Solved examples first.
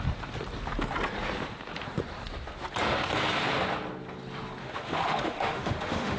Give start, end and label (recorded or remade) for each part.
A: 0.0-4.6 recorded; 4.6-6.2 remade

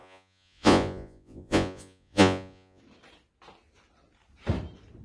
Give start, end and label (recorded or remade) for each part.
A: 0.0-2.8 remade; 2.8-5.0 recorded

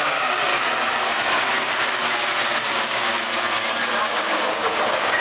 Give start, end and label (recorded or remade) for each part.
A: 0.0-0.5 remade; 0.5-2.7 recorded; 2.7-3.1 remade; 3.1-3.8 recorded; 3.8-5.2 remade